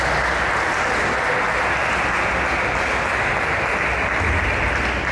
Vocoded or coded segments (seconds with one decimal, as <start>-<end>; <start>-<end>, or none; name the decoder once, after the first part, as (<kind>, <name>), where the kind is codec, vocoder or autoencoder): none